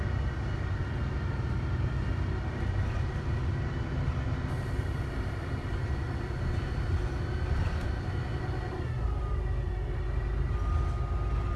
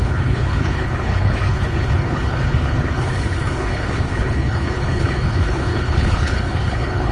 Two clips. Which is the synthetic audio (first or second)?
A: second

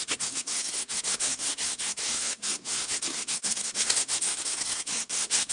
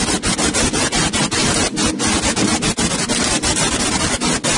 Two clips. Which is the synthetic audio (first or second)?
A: first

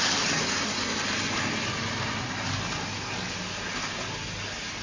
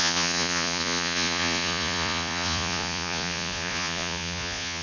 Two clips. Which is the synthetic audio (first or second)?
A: second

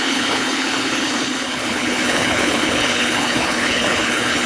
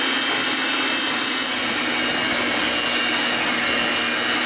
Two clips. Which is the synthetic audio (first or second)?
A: first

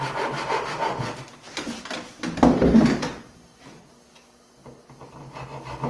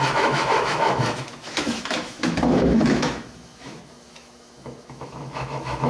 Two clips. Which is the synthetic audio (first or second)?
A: second